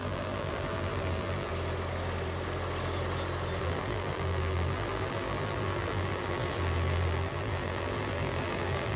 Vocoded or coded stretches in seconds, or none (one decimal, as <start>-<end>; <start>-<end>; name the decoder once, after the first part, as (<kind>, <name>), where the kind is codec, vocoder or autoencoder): 0.0-1.5 (vocoder, BigVGAN v2); 3.6-9.0